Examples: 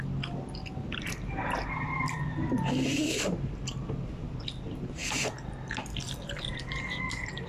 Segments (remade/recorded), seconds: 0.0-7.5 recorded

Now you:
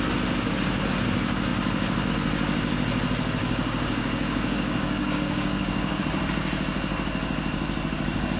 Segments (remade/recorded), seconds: 0.0-3.4 recorded; 3.4-6.0 remade; 6.0-8.4 recorded

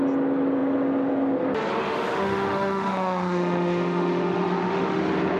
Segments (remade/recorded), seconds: 0.0-1.8 recorded; 1.8-5.0 remade; 5.0-5.4 recorded

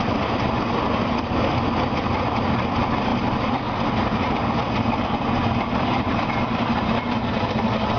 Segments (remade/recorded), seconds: 0.0-8.0 recorded

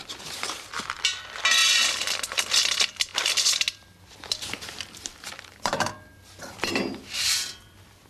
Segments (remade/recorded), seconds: 0.0-8.1 recorded

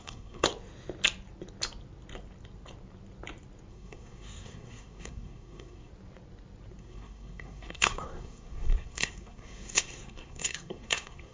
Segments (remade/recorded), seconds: 0.0-0.5 remade; 0.5-3.7 recorded; 3.7-5.9 remade; 5.9-6.8 recorded; 6.8-11.3 remade

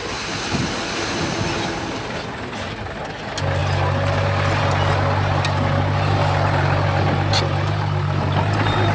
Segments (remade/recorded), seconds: 0.0-8.9 recorded